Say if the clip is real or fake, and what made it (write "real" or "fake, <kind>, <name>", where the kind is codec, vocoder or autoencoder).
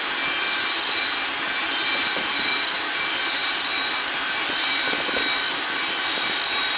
real